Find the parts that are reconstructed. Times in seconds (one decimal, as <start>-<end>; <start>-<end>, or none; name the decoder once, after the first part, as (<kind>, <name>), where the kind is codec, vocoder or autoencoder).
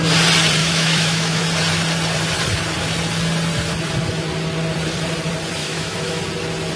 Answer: 0.6-1.4 (autoencoder, DAC-VAE); 5.6-6.2